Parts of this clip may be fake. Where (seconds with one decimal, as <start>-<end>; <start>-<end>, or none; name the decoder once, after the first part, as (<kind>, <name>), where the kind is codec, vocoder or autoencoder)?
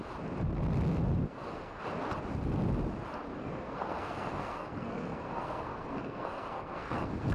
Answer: 1.2-1.8 (codec, SNAC); 3.3-7.3